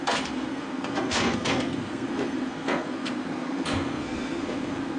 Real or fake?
fake